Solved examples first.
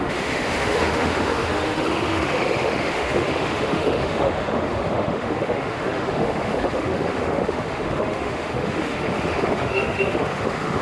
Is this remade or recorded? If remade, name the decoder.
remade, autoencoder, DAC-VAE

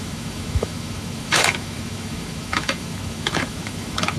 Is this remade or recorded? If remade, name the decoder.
remade, autoencoder, DAC-VAE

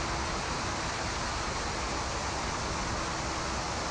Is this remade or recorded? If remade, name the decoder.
recorded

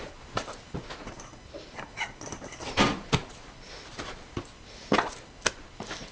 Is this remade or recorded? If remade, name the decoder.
recorded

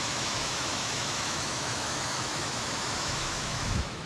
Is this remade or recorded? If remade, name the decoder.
remade, autoencoder, DAC-VAE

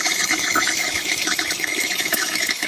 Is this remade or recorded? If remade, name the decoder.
remade, autoencoder, DAC-VAE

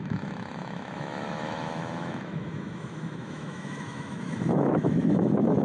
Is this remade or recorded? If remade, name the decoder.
remade, autoencoder, DAC-VAE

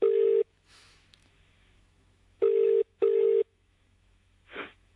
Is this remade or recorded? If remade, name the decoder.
remade, autoencoder, DAC-VAE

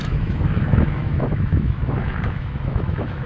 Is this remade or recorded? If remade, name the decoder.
remade, autoencoder, DAC-VAE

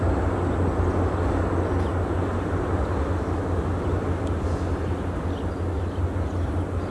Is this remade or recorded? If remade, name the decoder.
recorded